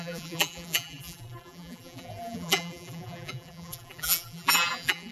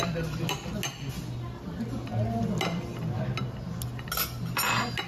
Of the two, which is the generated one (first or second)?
first